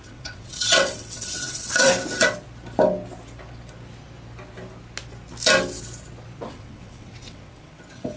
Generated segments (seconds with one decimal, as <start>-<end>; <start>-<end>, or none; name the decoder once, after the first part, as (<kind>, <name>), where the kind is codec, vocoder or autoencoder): 0.0-1.9 (vocoder, WaveNeXt); 6.5-8.2